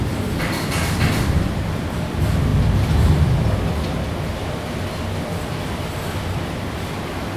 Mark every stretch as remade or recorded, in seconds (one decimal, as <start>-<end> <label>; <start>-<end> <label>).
0.0-7.4 recorded